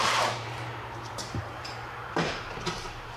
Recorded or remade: remade